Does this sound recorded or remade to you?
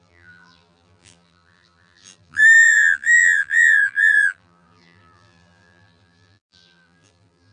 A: remade